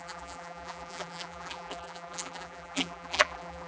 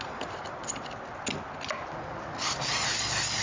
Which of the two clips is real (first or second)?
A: second